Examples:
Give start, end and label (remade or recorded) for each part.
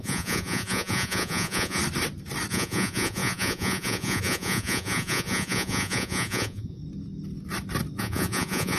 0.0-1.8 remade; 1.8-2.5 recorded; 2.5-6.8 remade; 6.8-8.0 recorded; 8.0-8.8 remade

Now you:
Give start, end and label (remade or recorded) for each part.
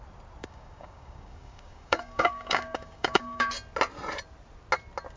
0.0-0.4 recorded; 0.4-3.5 remade; 3.5-5.2 recorded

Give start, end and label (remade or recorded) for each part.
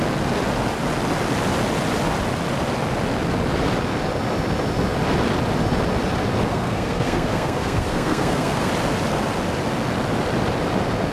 0.0-6.5 recorded; 6.5-8.7 remade; 8.7-11.1 recorded